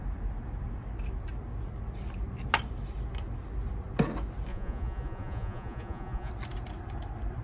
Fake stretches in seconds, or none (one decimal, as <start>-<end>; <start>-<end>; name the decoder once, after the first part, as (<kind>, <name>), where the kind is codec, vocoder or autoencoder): 4.5-6.3 (vocoder, Vocos)